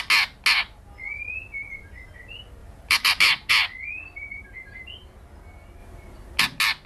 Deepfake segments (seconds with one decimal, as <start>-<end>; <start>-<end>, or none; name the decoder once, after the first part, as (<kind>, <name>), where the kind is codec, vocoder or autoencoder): 2.6-3.5 (vocoder, BigVGAN v2)